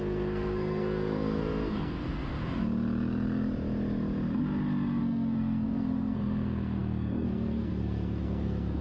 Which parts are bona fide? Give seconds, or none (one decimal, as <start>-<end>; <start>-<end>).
2.2-5.0